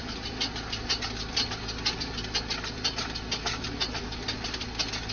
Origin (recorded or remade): recorded